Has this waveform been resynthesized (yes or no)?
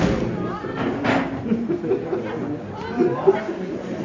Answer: no